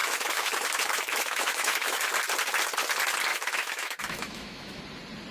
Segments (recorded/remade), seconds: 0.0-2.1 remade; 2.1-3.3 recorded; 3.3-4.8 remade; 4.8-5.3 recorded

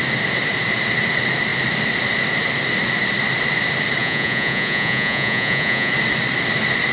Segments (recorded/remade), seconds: 0.0-4.0 recorded; 4.0-5.9 remade; 5.9-6.9 recorded

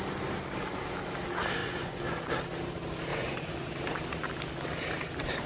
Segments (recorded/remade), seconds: 0.0-1.6 recorded; 1.6-2.3 remade; 2.3-3.1 recorded; 3.1-3.7 remade; 3.7-5.5 recorded